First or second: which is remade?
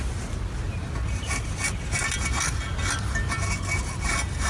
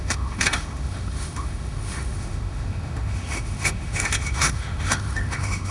second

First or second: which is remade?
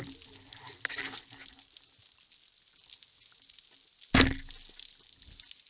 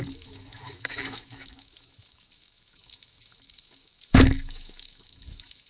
second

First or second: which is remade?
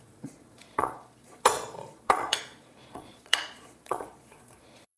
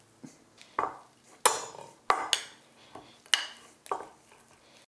first